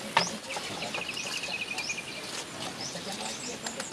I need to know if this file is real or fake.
real